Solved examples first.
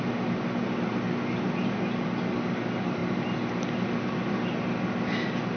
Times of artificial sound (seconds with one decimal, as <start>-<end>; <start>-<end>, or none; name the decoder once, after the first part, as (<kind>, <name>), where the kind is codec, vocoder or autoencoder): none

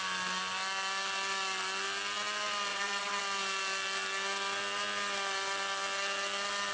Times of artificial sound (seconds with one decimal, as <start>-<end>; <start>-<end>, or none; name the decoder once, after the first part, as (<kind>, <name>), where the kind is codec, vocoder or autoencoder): 2.7-3.2 (vocoder, Vocos)

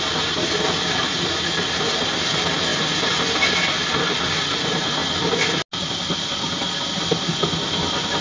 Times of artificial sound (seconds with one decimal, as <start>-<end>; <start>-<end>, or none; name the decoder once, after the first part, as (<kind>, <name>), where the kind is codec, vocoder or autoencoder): none

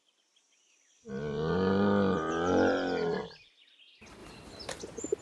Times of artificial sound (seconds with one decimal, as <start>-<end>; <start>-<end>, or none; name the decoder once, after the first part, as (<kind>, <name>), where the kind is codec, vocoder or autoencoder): none